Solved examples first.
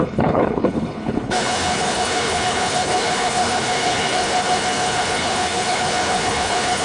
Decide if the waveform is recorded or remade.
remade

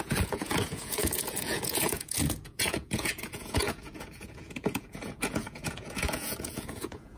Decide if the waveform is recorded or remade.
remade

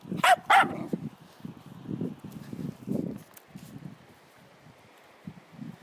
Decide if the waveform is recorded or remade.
recorded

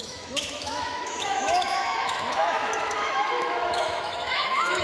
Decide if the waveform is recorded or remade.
remade